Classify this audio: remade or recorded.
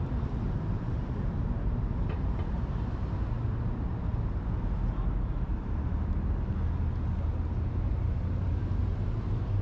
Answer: recorded